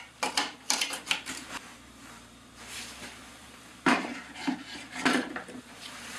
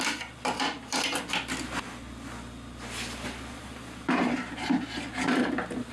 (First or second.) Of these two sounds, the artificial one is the first